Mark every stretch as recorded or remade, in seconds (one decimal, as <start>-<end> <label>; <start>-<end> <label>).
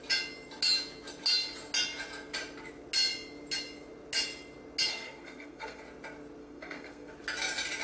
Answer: 0.0-4.9 recorded; 4.9-5.8 remade; 5.8-6.4 recorded; 6.4-7.1 remade; 7.1-7.8 recorded